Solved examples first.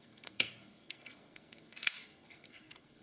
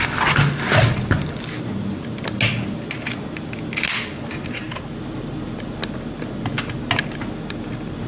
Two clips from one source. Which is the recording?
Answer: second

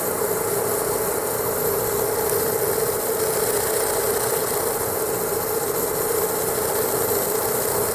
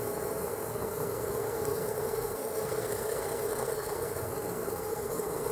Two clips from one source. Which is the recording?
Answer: first